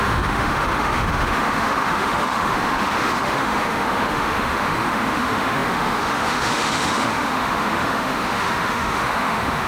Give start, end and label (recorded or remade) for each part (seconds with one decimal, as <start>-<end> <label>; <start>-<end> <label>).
0.0-9.7 remade